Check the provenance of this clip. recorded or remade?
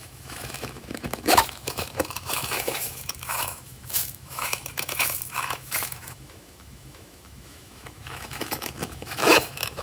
remade